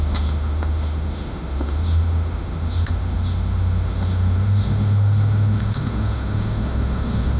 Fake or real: fake